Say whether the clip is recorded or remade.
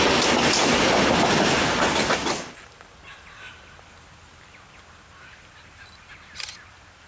recorded